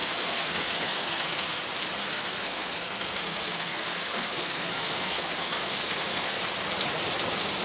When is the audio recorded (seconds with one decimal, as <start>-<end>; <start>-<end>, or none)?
1.6-2.0; 6.4-7.6